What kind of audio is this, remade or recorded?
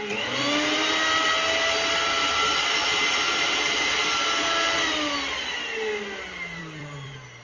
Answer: remade